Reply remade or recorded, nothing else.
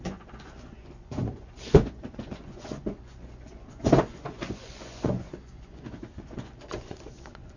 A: remade